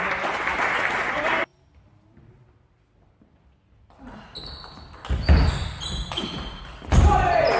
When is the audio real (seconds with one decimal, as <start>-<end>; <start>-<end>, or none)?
0.0-7.6